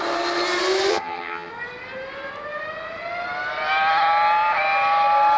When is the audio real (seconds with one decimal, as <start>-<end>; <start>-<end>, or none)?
0.0-0.9; 1.5-5.4